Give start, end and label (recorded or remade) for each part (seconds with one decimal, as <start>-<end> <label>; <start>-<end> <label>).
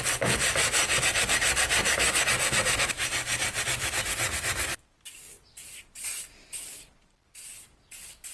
0.0-3.3 recorded; 3.3-4.0 remade; 4.0-8.3 recorded